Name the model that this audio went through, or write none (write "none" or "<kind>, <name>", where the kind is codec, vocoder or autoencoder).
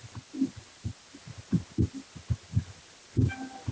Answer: none